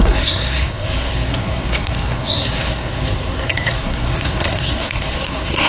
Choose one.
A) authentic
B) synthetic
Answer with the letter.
B